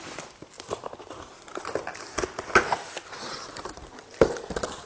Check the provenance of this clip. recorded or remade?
recorded